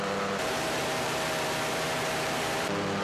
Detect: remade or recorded remade